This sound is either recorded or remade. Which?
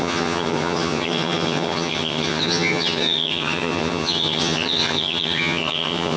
remade